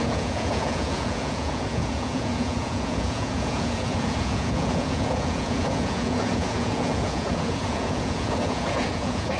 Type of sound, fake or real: fake